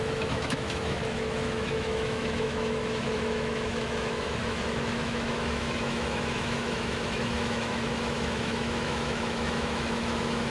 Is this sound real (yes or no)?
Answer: no